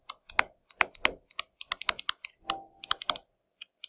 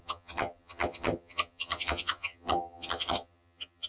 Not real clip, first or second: second